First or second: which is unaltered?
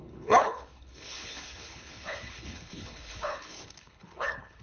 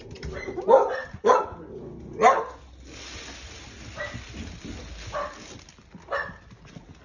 second